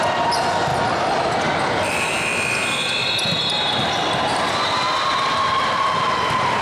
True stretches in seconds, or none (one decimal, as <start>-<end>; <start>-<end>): 0.7-1.6